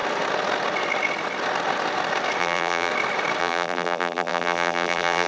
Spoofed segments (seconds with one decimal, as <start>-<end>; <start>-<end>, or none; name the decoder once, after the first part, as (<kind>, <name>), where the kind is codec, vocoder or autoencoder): 2.4-2.9 (vocoder, BigVGAN v2); 3.4-5.3